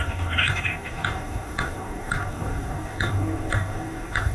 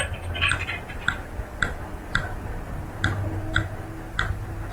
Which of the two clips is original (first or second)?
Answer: second